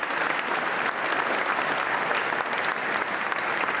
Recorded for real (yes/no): yes